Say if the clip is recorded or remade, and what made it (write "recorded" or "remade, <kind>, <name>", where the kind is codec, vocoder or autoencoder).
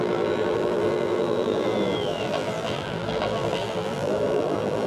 remade, vocoder, BigVGAN v2